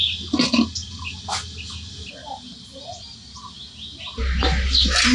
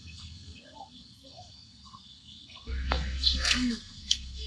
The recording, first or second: first